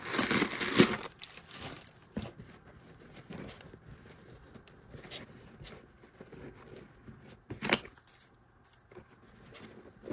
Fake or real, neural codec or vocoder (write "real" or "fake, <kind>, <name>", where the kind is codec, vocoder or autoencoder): real